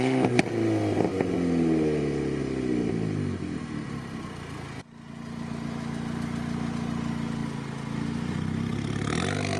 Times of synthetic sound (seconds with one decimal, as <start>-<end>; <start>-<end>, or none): none